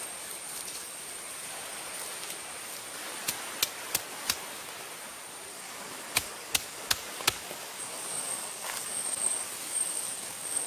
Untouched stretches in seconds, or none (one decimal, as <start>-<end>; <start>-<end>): 0.0-5.5